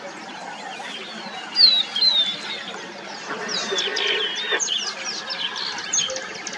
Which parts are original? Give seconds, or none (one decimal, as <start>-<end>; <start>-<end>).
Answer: 0.0-6.6